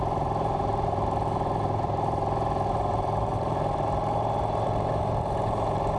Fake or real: fake